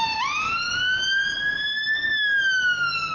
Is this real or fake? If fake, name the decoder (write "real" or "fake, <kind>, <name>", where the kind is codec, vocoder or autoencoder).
real